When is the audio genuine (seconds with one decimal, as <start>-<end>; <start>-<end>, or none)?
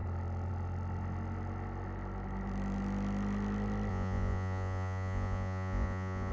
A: 0.0-3.9